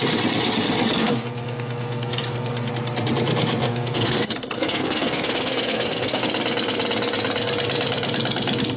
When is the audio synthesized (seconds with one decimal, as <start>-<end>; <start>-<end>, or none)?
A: 1.0-2.7; 3.6-6.2